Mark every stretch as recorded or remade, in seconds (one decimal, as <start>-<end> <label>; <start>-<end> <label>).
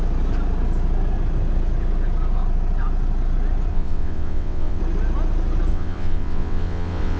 0.0-3.7 recorded; 3.7-4.8 remade; 4.8-5.7 recorded; 5.7-7.2 remade